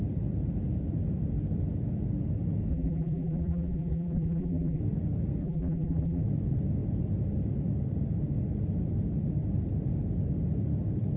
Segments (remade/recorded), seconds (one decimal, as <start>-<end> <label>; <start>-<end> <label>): 0.0-2.7 recorded; 2.7-4.8 remade; 4.8-5.4 recorded; 5.4-6.2 remade; 6.2-11.2 recorded